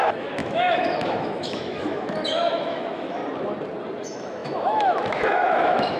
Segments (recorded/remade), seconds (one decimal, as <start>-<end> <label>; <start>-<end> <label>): 0.0-3.2 remade; 3.2-4.0 recorded; 4.0-6.0 remade